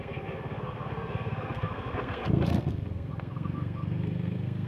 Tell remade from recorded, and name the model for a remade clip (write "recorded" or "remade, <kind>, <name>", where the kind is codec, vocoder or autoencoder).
remade, codec, SNAC